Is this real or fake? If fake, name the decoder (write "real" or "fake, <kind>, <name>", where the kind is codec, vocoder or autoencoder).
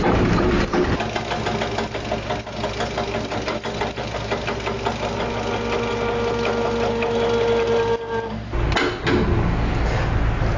real